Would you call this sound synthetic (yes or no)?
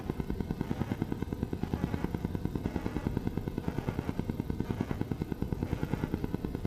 no